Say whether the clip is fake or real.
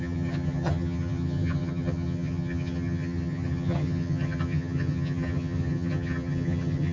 fake